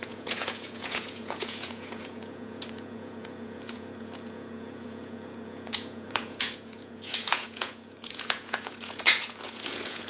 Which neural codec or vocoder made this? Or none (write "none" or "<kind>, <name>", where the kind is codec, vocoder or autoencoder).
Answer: vocoder, Vocos